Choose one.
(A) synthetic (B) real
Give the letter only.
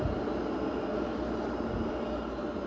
B